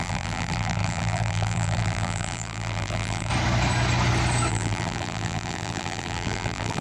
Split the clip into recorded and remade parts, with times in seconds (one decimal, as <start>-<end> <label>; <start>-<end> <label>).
0.0-3.3 remade; 3.3-4.5 recorded; 4.5-6.8 remade